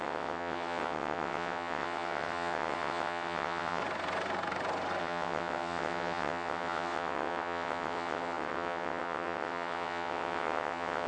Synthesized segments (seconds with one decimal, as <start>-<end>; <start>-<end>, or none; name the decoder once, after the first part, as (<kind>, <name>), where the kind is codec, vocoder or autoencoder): 0.0-3.8 (vocoder, WaveNeXt); 5.0-11.1